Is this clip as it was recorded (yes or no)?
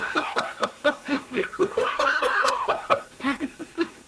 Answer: no